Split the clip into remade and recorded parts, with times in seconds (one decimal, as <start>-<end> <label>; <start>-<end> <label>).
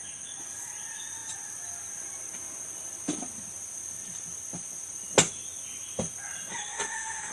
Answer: 0.0-6.5 recorded; 6.5-7.3 remade